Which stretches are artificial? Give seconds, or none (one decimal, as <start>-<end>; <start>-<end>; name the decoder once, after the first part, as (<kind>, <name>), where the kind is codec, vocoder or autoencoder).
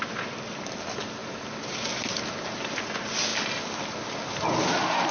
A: none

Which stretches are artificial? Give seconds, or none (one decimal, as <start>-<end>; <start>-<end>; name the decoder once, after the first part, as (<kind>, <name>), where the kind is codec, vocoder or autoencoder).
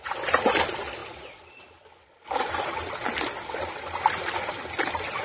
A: none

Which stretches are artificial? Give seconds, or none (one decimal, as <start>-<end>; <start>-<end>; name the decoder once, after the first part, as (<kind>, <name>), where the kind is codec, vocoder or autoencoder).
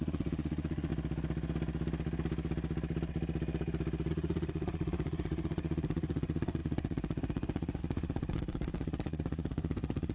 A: 0.0-0.9 (vocoder, Vocos); 4.1-10.1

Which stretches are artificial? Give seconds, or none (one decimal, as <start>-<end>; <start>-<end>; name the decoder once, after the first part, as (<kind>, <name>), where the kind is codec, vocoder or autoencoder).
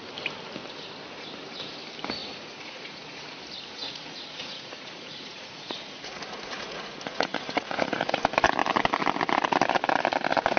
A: 2.2-3.2 (vocoder, Vocos); 3.8-8.1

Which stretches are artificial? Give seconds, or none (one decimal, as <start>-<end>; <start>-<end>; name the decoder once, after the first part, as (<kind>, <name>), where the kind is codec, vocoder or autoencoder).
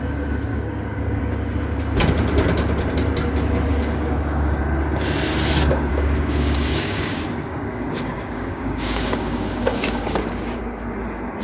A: 0.5-1.2 (codec, DAC); 3.7-4.6; 5.9-10.6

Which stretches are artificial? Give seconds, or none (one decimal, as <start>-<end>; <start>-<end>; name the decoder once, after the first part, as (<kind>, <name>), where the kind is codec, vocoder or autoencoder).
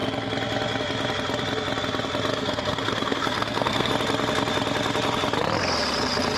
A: 2.3-3.9 (codec, SNAC)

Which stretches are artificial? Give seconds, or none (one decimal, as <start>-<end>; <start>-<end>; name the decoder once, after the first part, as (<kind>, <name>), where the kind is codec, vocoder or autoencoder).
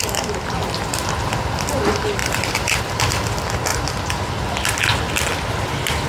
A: 2.2-2.8 (vocoder, BigVGAN v2)